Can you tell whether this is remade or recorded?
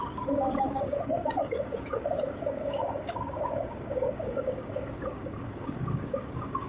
remade